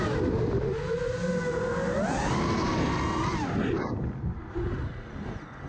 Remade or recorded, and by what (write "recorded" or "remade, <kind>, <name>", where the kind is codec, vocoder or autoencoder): recorded